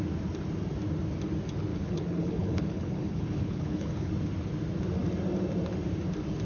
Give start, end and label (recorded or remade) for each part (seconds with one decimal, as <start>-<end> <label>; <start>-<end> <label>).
0.0-1.7 recorded; 1.7-4.1 remade; 4.1-6.5 recorded